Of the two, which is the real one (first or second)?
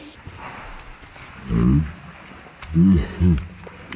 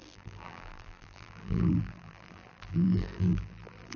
first